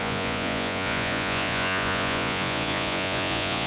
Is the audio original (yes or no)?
no